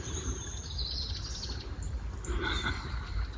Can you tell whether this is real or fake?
real